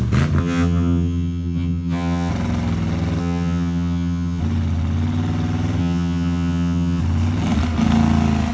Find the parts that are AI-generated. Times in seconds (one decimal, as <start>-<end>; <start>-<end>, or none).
0.4-2.3; 3.2-4.4; 5.8-7.0